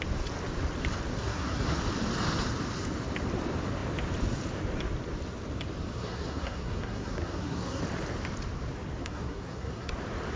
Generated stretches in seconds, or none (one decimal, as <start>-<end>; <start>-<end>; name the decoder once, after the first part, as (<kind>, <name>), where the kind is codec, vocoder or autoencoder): 1.1-1.8 (codec, SNAC); 5.9-7.8; 9.0-9.9